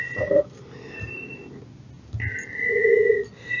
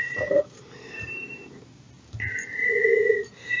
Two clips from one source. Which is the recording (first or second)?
first